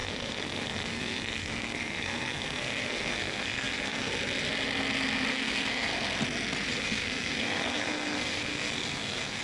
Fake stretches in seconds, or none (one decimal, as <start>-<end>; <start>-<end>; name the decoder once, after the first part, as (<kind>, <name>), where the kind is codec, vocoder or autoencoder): 0.0-4.1 (codec, SNAC); 5.3-5.9; 6.7-9.4